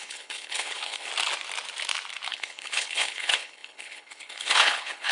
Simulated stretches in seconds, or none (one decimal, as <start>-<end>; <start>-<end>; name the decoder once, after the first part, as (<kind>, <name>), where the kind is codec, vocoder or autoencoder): 0.0-1.1 (codec, HILCodec); 2.3-5.1